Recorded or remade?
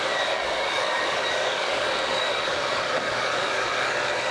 remade